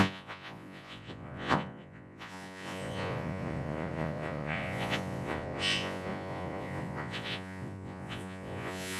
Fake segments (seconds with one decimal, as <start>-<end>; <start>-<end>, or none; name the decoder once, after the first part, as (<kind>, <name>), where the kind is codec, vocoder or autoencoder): 0.0-9.0 (vocoder, Vocos)